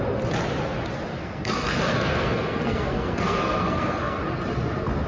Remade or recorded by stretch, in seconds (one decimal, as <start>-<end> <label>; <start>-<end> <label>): 0.0-1.1 recorded; 1.1-4.2 remade; 4.2-5.1 recorded